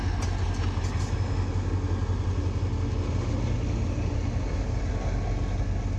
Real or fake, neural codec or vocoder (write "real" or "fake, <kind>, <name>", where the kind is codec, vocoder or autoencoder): real